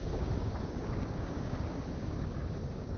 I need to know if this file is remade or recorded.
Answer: remade